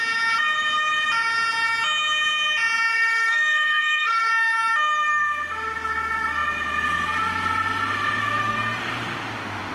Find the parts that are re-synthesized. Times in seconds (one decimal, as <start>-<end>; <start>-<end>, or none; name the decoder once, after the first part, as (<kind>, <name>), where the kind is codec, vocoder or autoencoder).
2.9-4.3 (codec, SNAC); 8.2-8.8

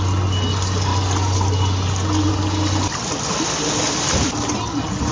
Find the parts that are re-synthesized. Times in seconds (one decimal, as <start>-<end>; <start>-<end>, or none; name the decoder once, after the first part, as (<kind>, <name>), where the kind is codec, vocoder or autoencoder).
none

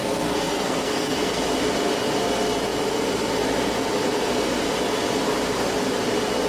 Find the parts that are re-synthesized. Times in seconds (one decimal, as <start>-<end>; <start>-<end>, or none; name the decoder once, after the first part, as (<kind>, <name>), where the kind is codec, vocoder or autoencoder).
0.0-1.4 (codec, SNAC)

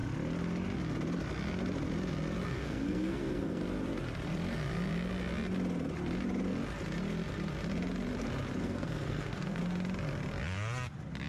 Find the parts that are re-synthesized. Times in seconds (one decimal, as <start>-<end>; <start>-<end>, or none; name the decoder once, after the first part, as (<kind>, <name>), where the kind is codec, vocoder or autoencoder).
2.5-3.6 (codec, SNAC); 8.6-9.6